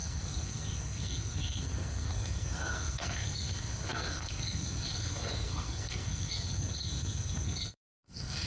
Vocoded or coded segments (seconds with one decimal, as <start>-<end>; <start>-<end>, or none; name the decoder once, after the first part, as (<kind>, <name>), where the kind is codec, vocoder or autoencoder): 0.0-8.5 (codec, SNAC)